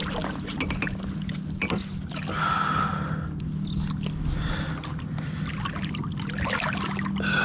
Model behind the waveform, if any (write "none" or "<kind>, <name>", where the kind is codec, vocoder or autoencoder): none